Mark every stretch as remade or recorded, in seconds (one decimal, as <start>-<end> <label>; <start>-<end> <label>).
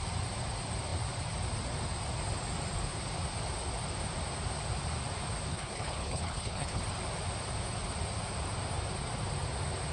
0.0-5.5 recorded; 5.5-6.8 remade; 6.8-9.9 recorded